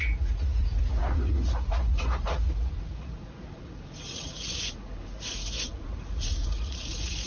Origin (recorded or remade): remade